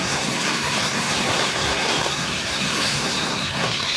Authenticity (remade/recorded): remade